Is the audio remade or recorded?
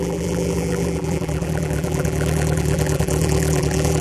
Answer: remade